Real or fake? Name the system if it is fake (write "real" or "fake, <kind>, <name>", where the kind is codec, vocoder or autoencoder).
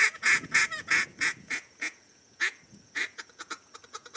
fake, vocoder, Vocos